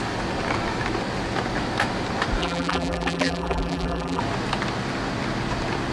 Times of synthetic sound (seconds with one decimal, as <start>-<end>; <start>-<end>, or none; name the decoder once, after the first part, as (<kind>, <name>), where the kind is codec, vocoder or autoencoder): 2.4-4.2 (vocoder, BigVGAN v2)